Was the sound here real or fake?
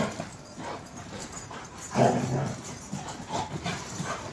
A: fake